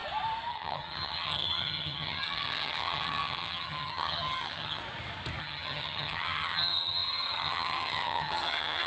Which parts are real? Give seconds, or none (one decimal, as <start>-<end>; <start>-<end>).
0.0-0.5; 4.8-5.4